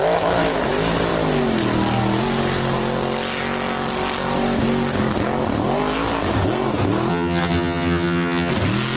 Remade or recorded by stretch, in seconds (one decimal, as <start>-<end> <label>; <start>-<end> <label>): 0.0-7.1 recorded; 7.1-8.5 remade; 8.5-9.0 recorded